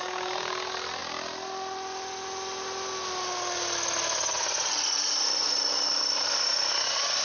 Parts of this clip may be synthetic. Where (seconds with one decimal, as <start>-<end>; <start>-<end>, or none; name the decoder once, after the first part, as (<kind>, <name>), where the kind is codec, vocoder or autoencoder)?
none